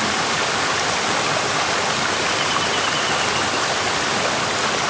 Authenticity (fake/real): real